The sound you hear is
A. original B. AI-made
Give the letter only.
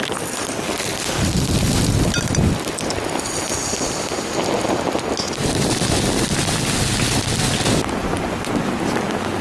A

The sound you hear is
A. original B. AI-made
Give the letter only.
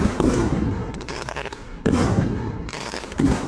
B